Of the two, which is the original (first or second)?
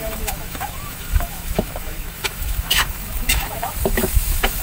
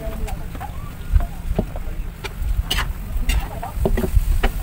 second